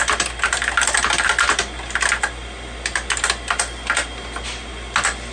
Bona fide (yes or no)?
yes